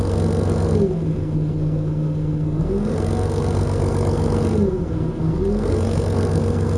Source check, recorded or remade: remade